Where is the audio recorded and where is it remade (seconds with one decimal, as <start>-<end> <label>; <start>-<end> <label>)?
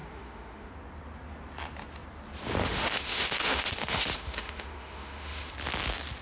0.0-0.7 remade; 0.7-2.6 recorded; 2.6-5.5 remade; 5.5-6.2 recorded